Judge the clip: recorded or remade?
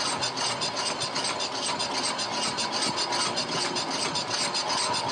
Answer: recorded